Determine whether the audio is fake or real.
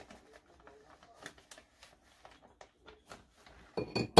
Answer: real